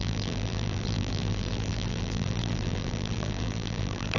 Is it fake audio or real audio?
fake